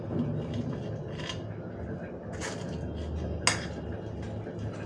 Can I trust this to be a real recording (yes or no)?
yes